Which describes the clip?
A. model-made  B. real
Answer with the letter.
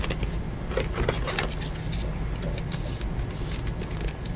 B